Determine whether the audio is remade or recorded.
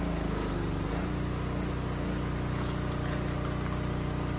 recorded